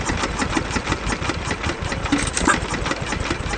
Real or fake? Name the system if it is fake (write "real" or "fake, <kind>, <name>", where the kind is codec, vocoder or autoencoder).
real